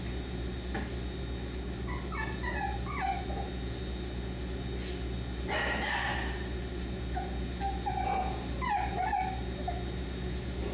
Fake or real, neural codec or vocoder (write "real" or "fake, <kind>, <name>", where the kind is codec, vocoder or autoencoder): real